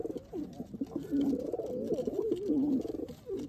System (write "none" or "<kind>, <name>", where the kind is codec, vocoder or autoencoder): none